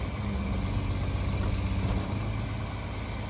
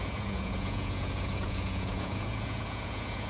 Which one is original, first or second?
first